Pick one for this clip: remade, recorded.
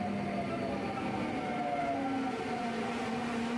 recorded